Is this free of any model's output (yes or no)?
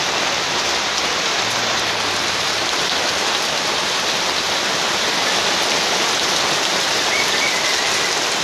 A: yes